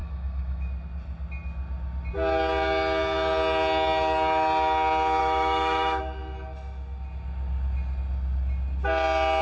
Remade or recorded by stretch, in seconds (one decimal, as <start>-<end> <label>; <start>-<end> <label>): 0.0-0.7 remade; 0.7-5.2 recorded; 5.2-6.0 remade; 6.0-9.4 recorded